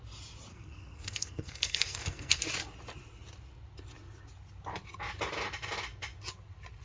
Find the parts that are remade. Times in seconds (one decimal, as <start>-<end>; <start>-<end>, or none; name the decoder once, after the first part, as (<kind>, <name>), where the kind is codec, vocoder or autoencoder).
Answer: 0.5-2.4 (codec, SNAC)